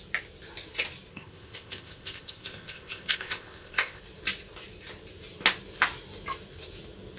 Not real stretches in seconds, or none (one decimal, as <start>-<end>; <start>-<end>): 1.1-4.0